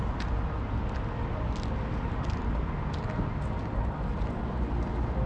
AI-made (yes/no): no